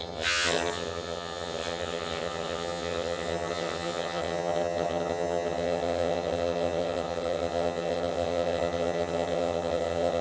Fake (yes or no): yes